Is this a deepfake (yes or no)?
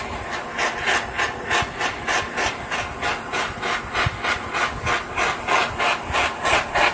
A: no